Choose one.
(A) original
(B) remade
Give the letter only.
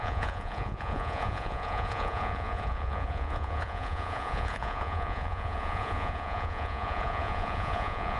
B